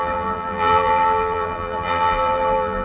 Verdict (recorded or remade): remade